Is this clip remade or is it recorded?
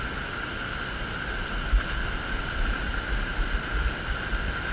recorded